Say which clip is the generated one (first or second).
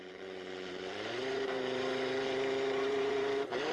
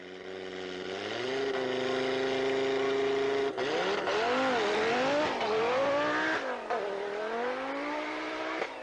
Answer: first